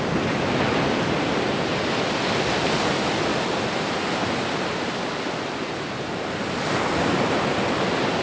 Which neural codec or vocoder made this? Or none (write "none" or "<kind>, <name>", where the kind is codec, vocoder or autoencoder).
none